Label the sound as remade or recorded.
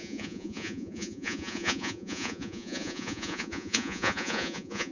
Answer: remade